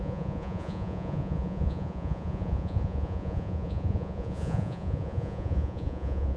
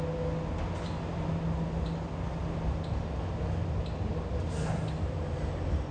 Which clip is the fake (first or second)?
first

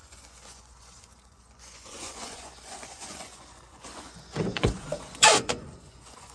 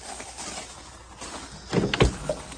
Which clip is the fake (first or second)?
first